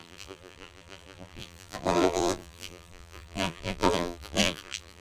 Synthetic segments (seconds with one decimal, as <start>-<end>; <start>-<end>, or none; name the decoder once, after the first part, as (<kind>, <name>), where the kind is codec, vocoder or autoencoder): 0.0-5.0 (vocoder, BigVGAN v2)